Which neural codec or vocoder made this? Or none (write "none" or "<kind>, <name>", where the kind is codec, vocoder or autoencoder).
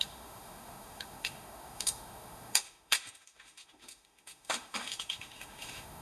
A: autoencoder, DAC-VAE